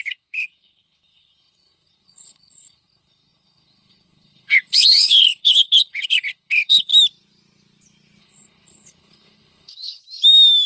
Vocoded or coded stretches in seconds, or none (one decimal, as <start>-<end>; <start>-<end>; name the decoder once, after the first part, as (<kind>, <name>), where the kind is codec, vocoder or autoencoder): 0.0-6.9 (codec, HILCodec); 8.2-10.0